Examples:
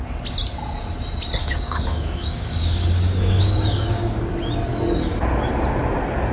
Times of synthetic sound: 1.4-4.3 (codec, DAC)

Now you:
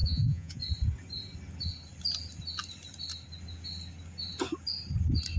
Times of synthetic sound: 0.0-0.6 (vocoder, Vocos)

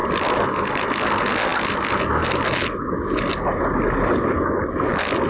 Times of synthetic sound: 0.0-0.6 (vocoder, BigVGAN v2)

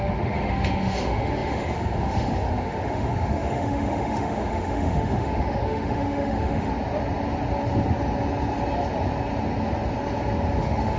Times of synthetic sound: 0.0-6.7 (autoencoder, DAC-VAE); 10.6-11.0

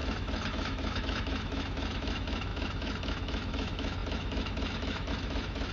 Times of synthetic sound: 0.0-5.7 (autoencoder, DAC-VAE)

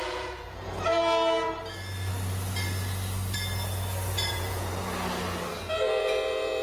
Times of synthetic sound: 0.0-0.9 (vocoder, Vocos); 4.3-4.7; 5.5-6.6

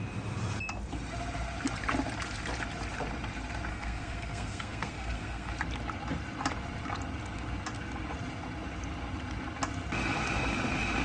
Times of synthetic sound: 3.7-5.5 (codec, SNAC)